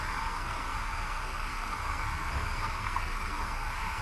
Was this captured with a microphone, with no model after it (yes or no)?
no